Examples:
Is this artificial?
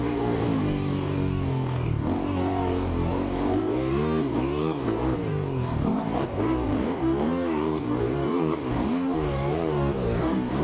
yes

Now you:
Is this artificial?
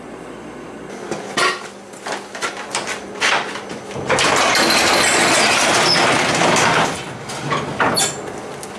no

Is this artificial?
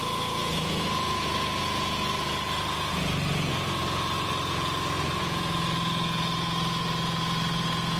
yes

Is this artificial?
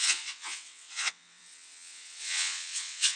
yes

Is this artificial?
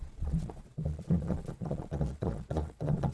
yes